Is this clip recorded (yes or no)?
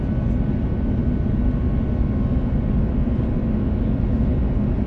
yes